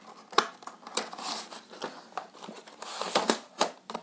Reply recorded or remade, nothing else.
recorded